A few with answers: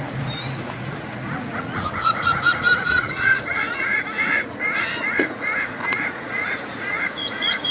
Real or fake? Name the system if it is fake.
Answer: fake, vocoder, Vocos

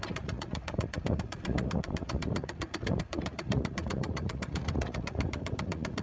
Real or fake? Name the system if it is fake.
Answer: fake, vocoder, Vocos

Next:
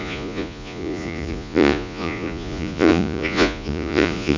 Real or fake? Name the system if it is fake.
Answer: fake, vocoder, Vocos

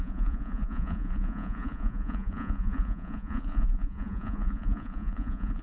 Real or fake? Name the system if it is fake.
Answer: fake, vocoder, Vocos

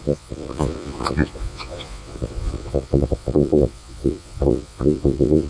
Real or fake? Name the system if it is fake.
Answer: fake, vocoder, Vocos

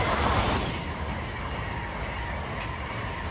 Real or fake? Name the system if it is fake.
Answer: real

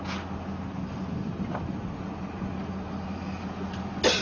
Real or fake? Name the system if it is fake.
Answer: real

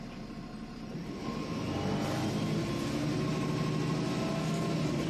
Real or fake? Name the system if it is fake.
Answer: real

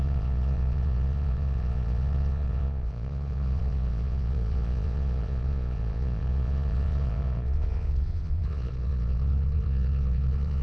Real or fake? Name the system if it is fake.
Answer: fake, vocoder, Vocos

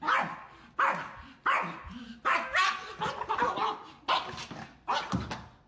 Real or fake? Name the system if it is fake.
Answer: real